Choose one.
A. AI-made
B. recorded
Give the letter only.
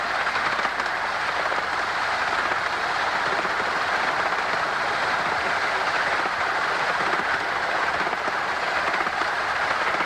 B